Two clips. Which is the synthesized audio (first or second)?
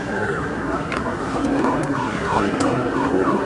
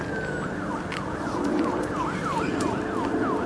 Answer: first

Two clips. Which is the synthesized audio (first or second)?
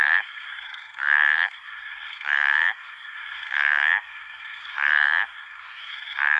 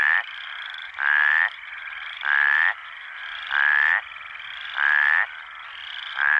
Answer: first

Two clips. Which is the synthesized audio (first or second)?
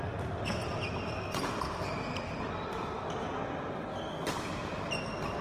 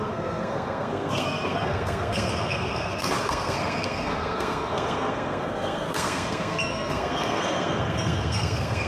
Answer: second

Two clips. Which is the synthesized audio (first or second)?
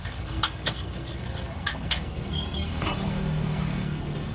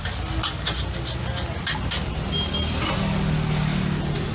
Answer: first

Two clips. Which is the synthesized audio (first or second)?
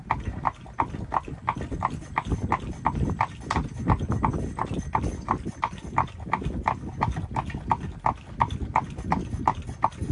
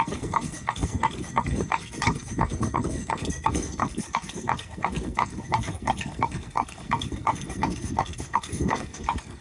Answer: second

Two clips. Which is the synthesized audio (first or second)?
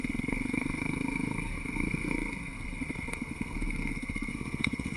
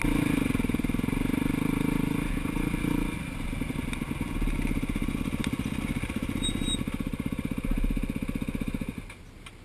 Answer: first